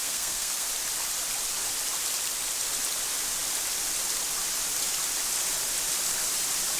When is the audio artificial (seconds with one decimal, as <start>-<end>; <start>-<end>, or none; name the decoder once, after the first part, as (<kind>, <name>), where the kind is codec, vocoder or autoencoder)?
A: 0.0-0.7 (codec, SNAC)

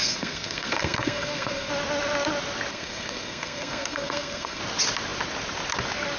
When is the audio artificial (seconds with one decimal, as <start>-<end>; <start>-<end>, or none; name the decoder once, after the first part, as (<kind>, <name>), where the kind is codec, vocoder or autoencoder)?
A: 0.0-1.7 (codec, SNAC); 2.7-4.6

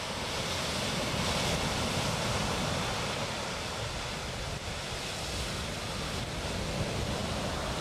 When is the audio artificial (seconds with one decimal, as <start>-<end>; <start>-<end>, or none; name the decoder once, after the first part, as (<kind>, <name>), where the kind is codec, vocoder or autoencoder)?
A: none

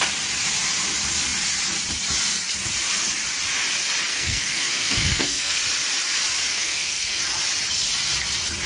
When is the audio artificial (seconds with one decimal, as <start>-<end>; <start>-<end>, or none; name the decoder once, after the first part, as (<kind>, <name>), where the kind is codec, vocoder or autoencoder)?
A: 4.1-5.6 (codec, SNAC); 6.5-7.2

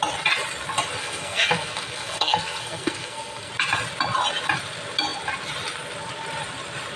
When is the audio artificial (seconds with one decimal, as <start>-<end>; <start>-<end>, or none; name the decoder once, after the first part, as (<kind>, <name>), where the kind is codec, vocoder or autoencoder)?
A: 1.0-3.5 (codec, SNAC)